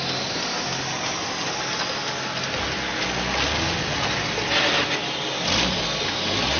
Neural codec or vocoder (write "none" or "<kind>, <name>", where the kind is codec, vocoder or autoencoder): none